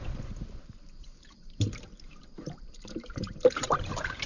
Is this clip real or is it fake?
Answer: fake